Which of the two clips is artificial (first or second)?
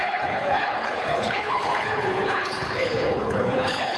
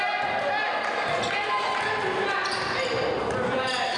first